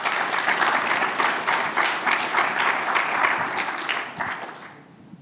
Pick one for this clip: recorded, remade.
recorded